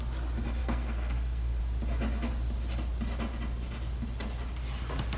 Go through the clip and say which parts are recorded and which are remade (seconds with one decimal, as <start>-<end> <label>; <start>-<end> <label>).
0.0-0.6 recorded; 0.6-1.6 remade; 1.6-5.2 recorded